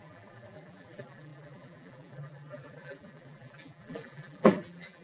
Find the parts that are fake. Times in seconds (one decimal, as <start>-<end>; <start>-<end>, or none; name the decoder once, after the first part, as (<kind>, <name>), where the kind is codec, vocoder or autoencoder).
0.0-5.0 (vocoder, BigVGAN v2)